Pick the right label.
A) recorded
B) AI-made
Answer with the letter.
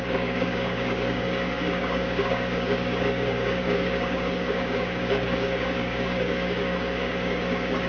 B